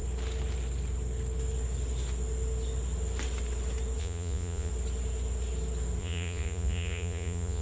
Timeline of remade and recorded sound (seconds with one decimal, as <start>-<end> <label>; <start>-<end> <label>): 0.0-4.0 recorded; 4.0-4.7 remade; 4.7-6.0 recorded; 6.0-7.6 remade

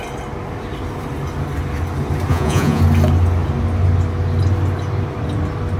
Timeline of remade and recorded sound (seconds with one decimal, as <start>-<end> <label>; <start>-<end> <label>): 0.0-2.3 recorded; 2.3-2.8 remade; 2.8-5.8 recorded